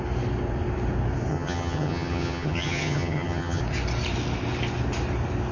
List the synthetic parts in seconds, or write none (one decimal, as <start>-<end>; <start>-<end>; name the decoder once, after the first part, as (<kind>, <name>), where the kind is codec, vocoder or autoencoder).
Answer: 1.3-3.6 (vocoder, HiFi-GAN)